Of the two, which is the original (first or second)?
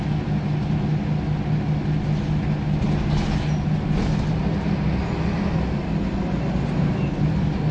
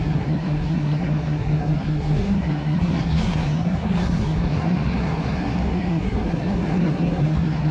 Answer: first